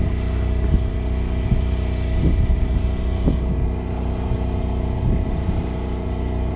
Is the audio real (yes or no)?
yes